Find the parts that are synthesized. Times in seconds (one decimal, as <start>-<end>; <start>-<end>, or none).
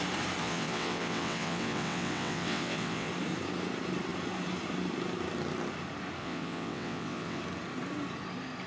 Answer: 0.4-3.1; 6.2-7.4